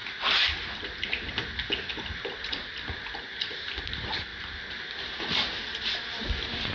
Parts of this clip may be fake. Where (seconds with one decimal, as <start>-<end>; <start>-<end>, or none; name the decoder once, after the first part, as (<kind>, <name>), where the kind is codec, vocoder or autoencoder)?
3.8-4.3 (vocoder, BigVGAN v2); 5.0-6.7